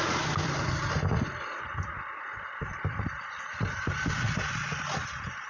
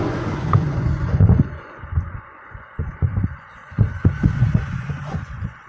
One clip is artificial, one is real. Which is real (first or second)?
first